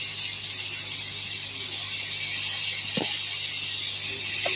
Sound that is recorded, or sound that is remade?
recorded